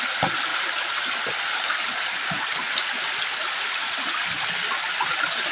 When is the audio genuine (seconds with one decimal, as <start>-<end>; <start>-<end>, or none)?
0.0-0.5; 1.2-5.5